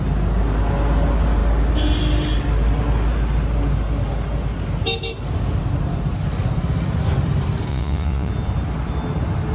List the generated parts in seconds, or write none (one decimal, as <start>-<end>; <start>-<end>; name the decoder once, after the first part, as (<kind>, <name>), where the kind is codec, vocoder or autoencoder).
7.7-8.3 (vocoder, Vocos)